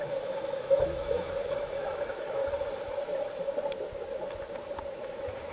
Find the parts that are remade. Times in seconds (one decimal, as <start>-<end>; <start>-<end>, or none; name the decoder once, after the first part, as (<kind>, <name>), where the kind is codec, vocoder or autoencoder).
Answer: 0.0-2.4 (autoencoder, DAC-VAE); 4.9-5.5